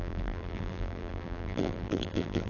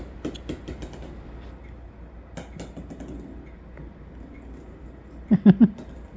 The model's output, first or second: first